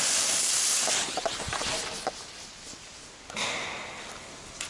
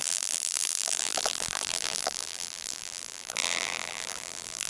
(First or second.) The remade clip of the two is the second